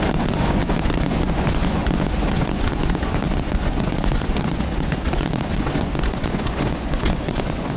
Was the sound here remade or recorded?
remade